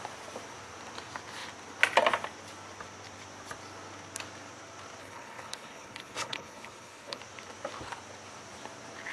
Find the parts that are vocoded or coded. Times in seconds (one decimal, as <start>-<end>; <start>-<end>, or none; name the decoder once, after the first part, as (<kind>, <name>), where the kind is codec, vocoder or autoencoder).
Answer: 5.0-7.2 (codec, HILCodec)